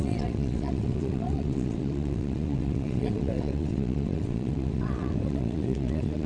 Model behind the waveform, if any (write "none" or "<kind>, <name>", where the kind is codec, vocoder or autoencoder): vocoder, WaveNeXt